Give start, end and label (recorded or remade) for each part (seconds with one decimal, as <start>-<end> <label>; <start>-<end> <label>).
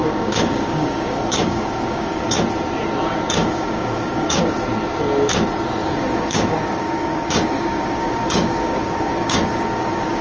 0.0-2.4 remade; 2.4-3.4 recorded; 3.4-4.4 remade; 4.4-5.8 recorded; 5.8-10.2 remade